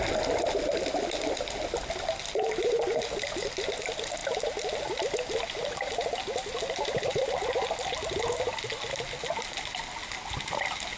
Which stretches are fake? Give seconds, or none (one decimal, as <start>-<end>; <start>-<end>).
none